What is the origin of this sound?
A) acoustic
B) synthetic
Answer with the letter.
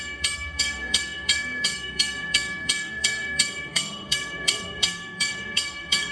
B